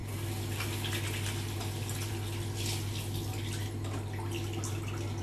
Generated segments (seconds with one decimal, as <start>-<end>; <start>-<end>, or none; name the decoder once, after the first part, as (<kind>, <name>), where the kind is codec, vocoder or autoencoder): none